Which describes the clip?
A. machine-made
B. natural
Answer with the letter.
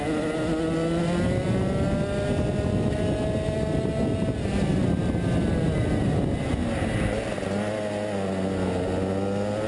B